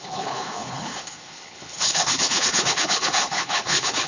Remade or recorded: remade